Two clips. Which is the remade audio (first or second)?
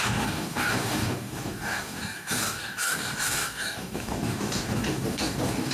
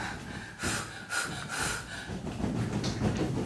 first